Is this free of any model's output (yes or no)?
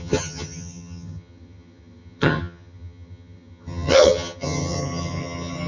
no